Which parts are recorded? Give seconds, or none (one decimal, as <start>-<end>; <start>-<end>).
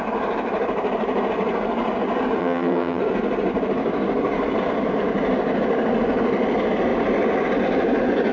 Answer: 0.0-2.4; 3.0-8.3